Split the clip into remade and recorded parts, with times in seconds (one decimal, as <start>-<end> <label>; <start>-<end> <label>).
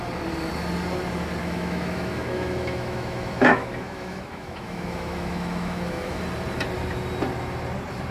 0.0-1.4 recorded; 1.4-6.2 remade; 6.2-8.1 recorded